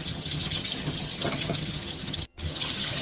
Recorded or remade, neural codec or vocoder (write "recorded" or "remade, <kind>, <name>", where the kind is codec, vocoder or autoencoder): remade, vocoder, HiFi-GAN